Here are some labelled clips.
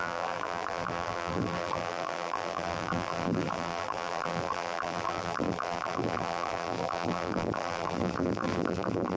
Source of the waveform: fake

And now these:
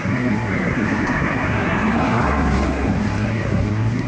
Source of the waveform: fake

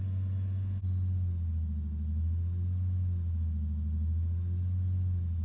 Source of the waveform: real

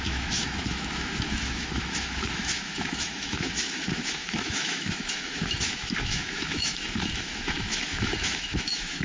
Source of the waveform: fake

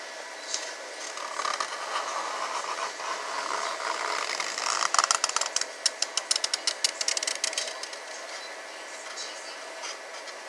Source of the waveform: real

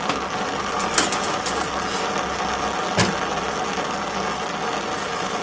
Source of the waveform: real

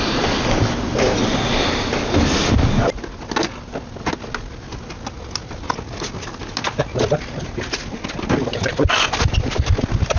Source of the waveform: real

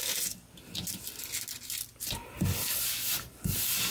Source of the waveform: real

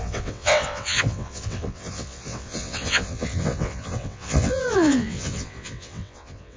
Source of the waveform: fake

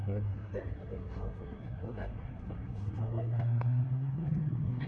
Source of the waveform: fake